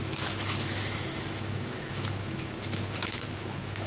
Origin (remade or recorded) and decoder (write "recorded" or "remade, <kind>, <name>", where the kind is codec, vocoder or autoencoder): remade, autoencoder, DAC-VAE